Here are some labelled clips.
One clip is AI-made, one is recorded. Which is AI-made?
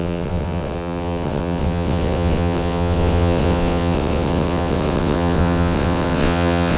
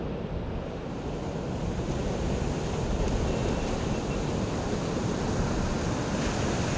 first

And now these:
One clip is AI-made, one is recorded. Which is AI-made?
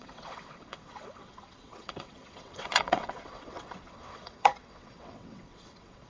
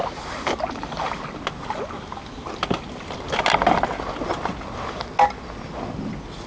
first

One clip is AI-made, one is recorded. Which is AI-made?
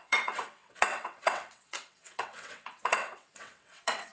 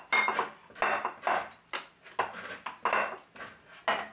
first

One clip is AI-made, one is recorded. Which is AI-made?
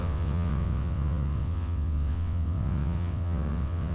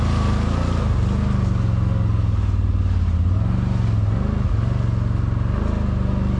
first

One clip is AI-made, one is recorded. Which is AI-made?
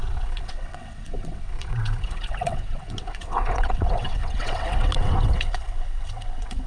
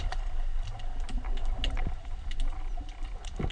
first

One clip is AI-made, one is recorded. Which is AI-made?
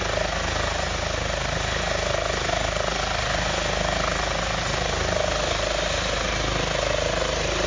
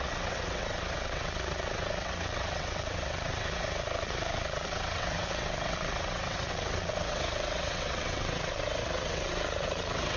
second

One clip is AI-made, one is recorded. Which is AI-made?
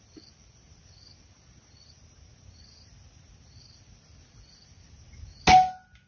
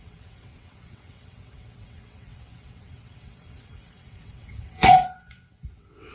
second